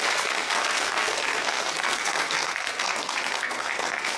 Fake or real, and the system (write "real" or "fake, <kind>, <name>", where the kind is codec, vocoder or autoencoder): fake, codec, SNAC